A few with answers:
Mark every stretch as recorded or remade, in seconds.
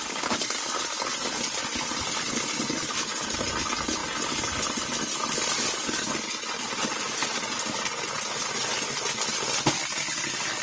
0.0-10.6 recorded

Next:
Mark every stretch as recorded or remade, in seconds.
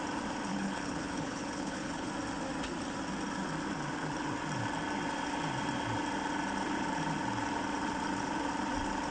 0.0-0.5 recorded; 0.5-2.1 remade; 2.1-9.1 recorded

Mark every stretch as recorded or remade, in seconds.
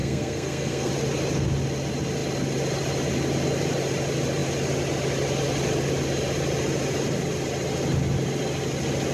0.0-0.9 remade; 0.9-9.1 recorded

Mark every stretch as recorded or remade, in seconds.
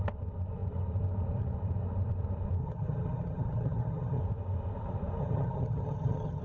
0.0-2.6 recorded; 2.6-4.2 remade; 4.2-5.2 recorded; 5.2-6.4 remade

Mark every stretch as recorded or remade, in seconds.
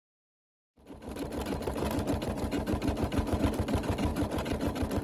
0.0-4.1 recorded; 4.1-5.0 remade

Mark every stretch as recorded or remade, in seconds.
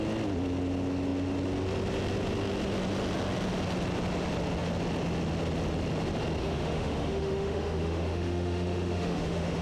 0.0-6.4 recorded; 6.4-9.6 remade